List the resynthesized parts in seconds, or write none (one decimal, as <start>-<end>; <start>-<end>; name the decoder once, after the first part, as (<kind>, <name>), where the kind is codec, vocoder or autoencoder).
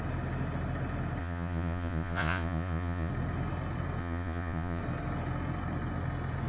1.2-3.1 (vocoder, Vocos); 4.0-4.8